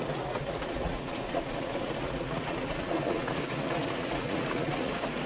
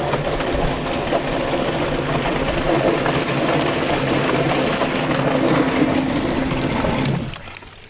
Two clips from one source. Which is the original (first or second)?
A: second